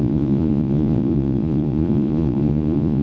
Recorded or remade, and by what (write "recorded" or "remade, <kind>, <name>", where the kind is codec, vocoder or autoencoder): remade, vocoder, Vocos